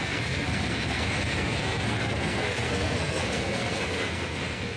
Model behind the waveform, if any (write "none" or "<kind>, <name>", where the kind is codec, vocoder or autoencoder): codec, SNAC